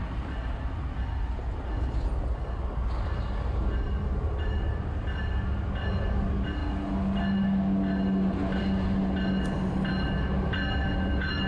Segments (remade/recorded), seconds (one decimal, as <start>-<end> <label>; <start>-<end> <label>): 0.0-11.5 recorded